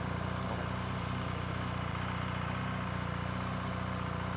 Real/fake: real